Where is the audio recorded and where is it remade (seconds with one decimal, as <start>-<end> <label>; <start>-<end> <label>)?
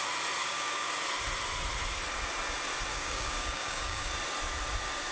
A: 0.0-0.4 recorded; 0.4-0.9 remade; 0.9-2.9 recorded; 2.9-4.1 remade; 4.1-5.1 recorded